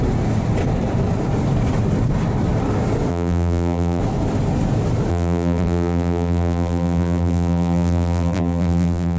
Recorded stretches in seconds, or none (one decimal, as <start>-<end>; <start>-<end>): 0.0-3.1; 4.0-5.1